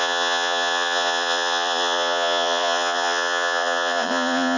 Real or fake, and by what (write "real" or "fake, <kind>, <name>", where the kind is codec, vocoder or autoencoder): fake, vocoder, Vocos